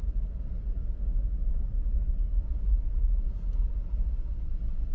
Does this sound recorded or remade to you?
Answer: recorded